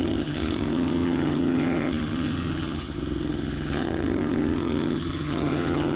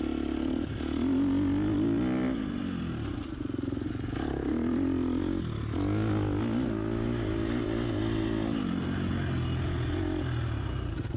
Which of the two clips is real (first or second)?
second